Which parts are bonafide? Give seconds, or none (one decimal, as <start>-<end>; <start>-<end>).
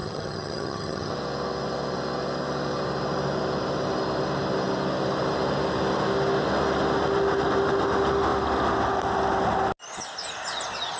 1.1-11.0